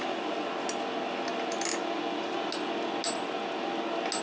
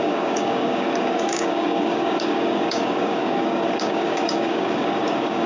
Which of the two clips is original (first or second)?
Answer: first